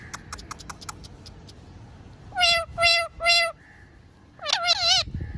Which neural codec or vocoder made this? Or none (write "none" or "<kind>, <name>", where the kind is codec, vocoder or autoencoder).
none